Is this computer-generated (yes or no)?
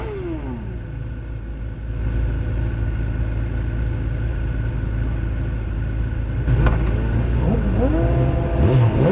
no